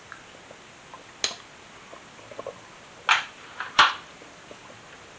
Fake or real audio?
real